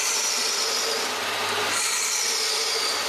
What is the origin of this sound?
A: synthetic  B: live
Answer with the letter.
B